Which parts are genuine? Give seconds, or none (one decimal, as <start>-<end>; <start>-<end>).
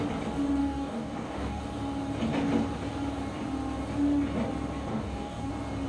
0.0-0.6; 1.6-4.9; 5.5-5.9